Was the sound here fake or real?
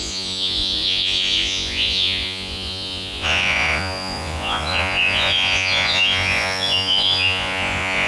fake